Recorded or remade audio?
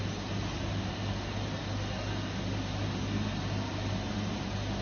recorded